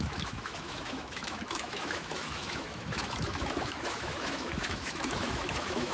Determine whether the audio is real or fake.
fake